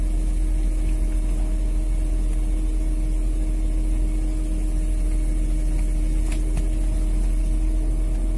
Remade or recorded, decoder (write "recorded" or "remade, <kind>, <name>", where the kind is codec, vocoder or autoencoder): recorded